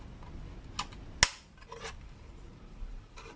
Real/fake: real